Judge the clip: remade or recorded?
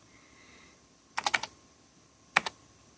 recorded